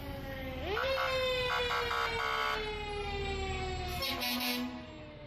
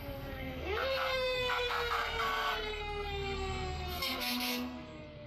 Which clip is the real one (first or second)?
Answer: first